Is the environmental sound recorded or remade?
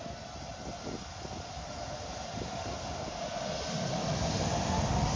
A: recorded